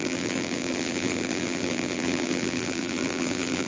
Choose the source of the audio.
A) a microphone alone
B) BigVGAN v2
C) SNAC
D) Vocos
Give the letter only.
B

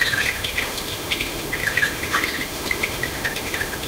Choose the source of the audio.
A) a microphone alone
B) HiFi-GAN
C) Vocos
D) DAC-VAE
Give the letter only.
D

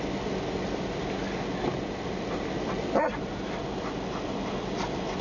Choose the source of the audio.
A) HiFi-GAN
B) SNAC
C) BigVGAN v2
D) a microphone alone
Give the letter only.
D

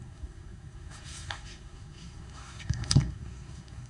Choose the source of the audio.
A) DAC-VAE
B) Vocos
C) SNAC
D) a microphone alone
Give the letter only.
C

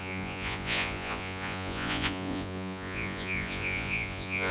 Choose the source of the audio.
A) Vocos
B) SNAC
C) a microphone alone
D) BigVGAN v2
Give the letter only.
A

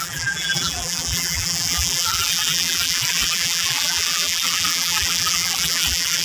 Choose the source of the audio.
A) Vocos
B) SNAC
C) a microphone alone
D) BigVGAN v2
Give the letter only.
D